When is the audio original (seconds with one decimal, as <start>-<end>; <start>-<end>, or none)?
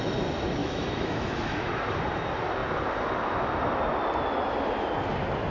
0.0-0.6; 1.7-5.5